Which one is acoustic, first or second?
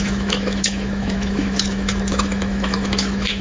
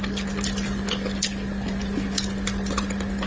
second